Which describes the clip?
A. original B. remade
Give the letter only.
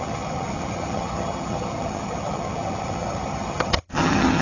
B